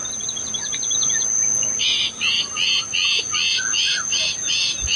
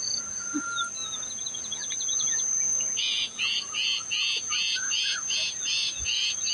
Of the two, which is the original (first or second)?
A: first